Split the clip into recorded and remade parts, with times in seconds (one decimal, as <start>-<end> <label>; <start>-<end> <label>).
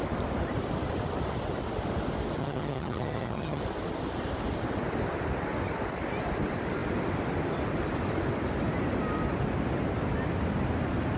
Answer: 0.0-2.4 recorded; 2.4-3.6 remade; 3.6-11.2 recorded